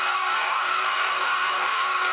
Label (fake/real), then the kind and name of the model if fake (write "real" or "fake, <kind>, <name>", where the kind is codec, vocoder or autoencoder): fake, codec, DAC